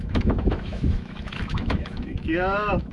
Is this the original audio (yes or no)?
no